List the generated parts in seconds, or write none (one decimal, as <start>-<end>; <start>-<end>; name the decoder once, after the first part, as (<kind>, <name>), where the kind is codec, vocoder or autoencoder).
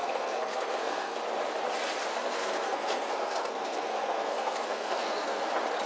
0.0-1.2 (codec, SNAC); 2.1-5.5